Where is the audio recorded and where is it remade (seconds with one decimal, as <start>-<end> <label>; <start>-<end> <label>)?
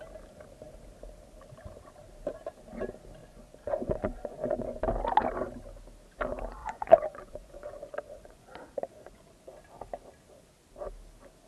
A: 0.0-3.2 recorded; 3.2-4.8 remade; 4.8-6.6 recorded; 6.6-9.5 remade; 9.5-11.5 recorded